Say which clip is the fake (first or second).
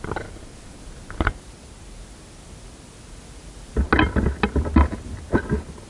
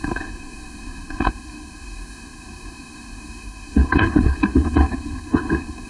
second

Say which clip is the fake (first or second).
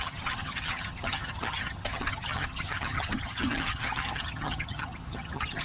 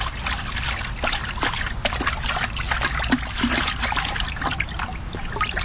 first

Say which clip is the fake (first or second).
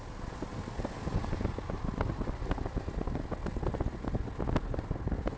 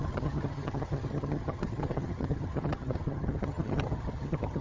second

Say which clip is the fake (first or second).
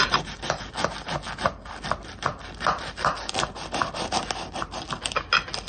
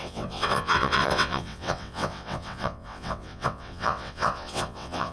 second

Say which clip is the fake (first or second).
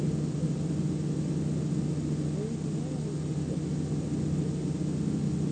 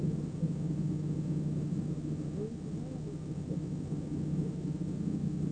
second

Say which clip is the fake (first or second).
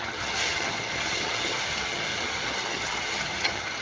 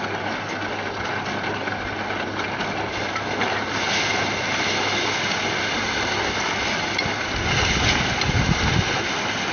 first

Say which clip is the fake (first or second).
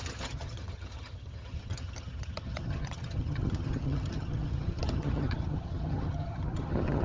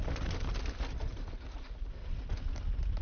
first